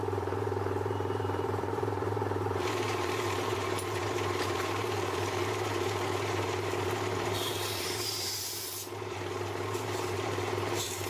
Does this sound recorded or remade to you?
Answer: remade